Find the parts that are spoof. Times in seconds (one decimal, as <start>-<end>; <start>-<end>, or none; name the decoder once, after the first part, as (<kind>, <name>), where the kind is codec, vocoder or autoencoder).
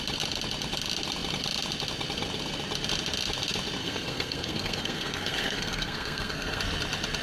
3.8-6.6 (codec, SNAC)